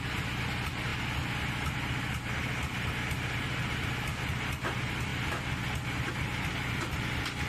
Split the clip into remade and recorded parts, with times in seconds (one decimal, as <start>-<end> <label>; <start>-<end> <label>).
0.0-7.5 recorded